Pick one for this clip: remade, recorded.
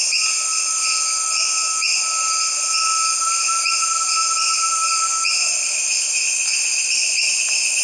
recorded